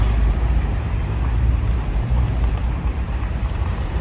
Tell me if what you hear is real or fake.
fake